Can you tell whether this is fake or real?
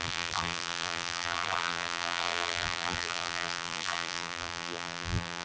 fake